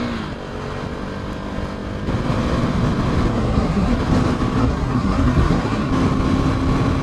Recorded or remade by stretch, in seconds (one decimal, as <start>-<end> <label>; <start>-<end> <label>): 0.0-3.3 recorded; 3.3-4.0 remade; 4.0-4.6 recorded; 4.6-5.9 remade; 5.9-7.0 recorded